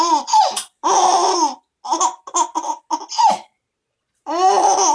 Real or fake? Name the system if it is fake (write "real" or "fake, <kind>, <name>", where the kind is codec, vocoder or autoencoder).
real